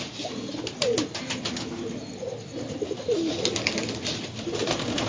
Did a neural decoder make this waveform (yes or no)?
no